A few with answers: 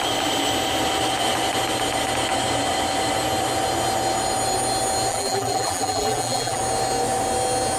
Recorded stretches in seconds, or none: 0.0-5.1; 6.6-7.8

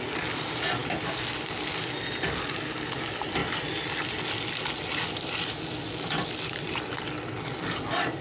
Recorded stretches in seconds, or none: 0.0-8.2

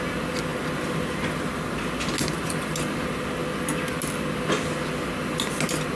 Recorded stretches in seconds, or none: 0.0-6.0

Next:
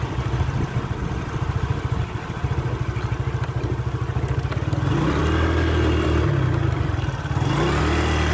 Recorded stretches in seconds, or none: 0.0-8.3

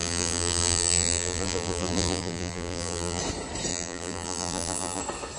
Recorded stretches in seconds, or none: 3.2-3.7; 5.0-5.4

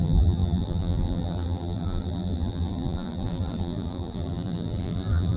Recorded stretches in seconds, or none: none

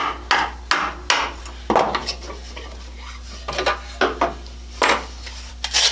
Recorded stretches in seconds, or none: 0.0-5.9